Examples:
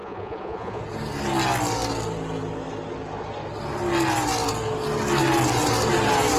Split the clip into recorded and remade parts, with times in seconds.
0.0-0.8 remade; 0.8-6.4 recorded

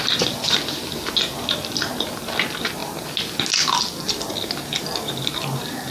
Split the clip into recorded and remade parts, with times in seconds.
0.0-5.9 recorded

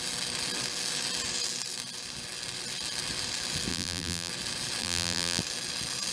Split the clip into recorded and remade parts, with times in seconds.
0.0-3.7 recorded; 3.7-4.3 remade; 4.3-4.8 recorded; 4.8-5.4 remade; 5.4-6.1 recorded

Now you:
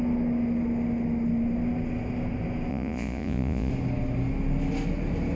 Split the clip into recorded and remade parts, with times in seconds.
0.0-2.7 recorded; 2.7-3.7 remade; 3.7-5.4 recorded